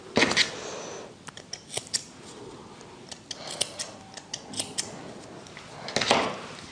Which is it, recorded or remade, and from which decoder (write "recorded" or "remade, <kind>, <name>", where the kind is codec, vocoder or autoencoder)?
recorded